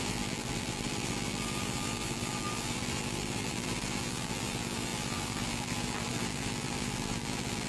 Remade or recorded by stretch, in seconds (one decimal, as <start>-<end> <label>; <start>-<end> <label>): 0.0-7.7 remade